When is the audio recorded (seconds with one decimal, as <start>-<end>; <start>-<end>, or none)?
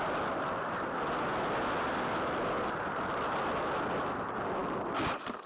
0.0-5.5